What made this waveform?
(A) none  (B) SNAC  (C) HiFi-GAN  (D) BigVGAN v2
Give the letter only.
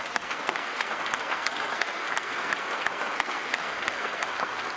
B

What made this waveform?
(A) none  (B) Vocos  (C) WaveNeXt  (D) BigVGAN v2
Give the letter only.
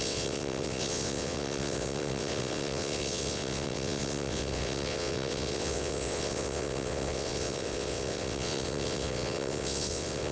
C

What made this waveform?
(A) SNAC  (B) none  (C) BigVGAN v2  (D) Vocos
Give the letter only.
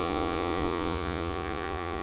D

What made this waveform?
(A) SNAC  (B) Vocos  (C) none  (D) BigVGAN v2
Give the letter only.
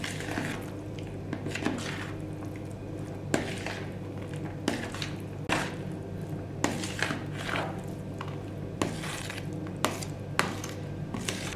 C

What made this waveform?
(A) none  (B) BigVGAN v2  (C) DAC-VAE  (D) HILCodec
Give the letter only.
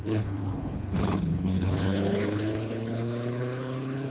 D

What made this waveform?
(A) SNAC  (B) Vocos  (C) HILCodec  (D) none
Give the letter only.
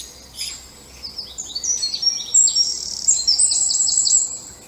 D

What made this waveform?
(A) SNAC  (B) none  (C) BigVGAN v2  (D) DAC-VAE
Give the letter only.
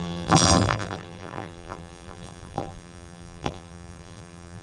C